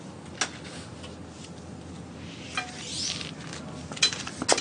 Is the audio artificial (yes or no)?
no